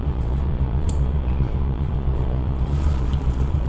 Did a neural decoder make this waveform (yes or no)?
yes